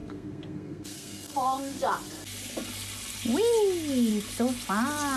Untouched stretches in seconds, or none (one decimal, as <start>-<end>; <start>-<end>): 1.8-5.2